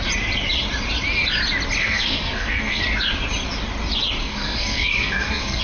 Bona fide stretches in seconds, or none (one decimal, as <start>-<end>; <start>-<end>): 0.0-1.8; 2.8-4.2